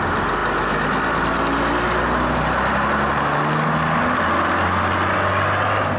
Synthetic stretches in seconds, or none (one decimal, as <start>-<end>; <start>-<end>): none